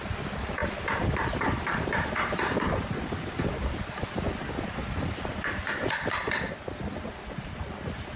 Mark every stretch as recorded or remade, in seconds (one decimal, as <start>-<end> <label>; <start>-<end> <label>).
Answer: 0.0-0.6 recorded; 0.6-2.6 remade; 2.6-5.8 recorded; 5.8-6.8 remade; 6.8-8.2 recorded